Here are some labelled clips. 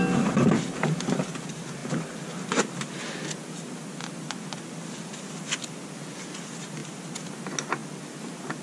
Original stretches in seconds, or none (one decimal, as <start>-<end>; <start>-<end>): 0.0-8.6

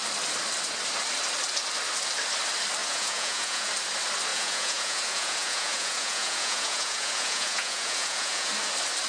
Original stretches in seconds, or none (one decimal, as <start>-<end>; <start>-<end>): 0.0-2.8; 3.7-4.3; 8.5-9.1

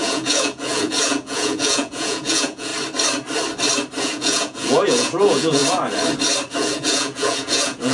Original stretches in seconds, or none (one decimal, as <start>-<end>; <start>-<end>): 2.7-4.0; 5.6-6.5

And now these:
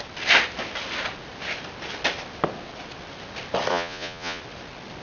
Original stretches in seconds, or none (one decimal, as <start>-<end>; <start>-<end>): 0.0-3.7; 4.4-5.0

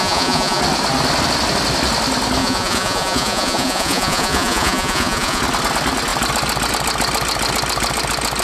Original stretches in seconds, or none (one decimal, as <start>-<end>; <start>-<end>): 0.6-2.4; 5.4-8.4

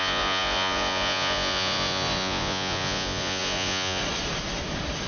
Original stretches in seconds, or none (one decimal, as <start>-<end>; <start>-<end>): 4.0-5.1

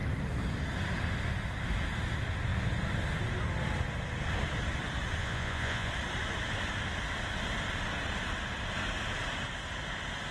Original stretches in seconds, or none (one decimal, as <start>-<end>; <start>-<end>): 0.0-5.2; 5.9-10.3

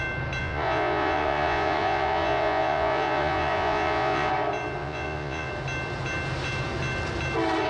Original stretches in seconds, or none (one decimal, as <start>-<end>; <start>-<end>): 0.0-0.4; 4.3-4.8; 5.5-7.7